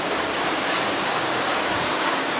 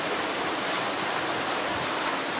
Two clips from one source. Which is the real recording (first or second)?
second